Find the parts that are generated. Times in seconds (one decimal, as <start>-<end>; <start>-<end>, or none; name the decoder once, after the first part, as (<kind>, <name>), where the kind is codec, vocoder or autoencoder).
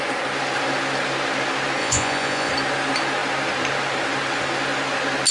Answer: 1.8-2.5 (vocoder, Vocos)